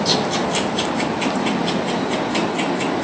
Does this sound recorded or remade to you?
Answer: recorded